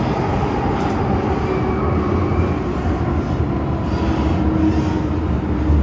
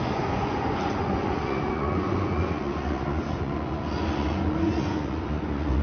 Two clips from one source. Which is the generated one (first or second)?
second